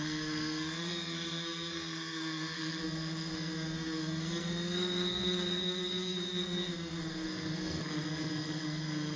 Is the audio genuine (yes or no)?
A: no